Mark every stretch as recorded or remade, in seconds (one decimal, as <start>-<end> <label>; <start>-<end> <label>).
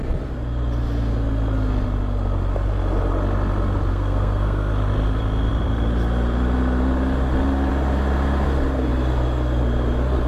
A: 0.0-3.9 recorded; 3.9-4.7 remade; 4.7-10.3 recorded